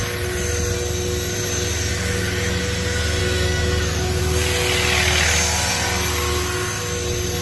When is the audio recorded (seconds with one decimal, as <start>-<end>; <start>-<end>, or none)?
0.0-1.9; 2.6-3.2; 4.2-7.4